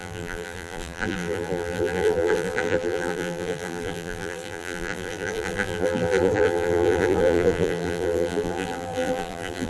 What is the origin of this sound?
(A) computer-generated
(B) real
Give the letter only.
A